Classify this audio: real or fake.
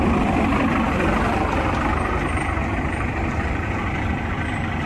real